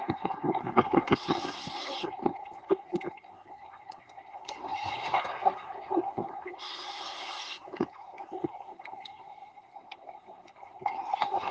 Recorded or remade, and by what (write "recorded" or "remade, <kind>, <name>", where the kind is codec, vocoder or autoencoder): remade, codec, SNAC